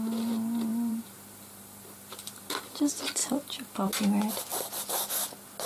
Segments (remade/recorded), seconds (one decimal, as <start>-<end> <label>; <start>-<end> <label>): 0.0-0.7 recorded; 0.7-2.8 remade; 2.8-5.7 recorded